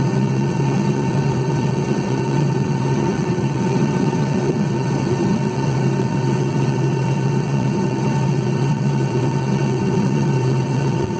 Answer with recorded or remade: remade